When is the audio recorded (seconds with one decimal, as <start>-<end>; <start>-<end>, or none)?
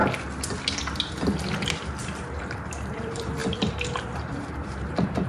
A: 0.0-2.2